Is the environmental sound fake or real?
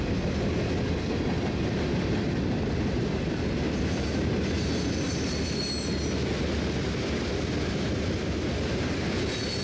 real